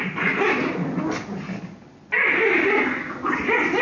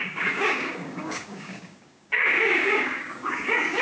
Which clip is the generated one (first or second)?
second